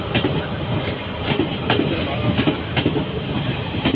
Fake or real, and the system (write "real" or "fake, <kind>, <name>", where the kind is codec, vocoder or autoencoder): real